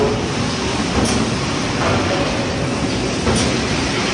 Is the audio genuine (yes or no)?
yes